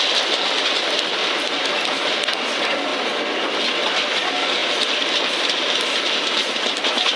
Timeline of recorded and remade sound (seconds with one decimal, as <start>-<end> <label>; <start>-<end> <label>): 0.0-1.2 recorded; 1.2-2.0 remade; 2.0-7.2 recorded